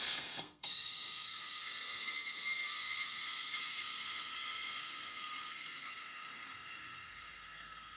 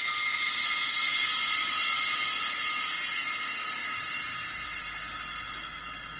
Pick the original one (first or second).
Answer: second